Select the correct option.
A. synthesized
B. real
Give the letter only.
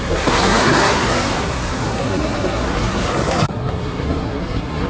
A